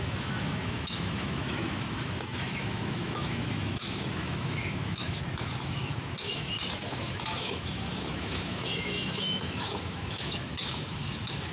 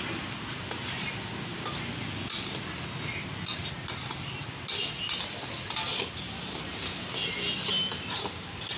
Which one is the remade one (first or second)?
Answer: first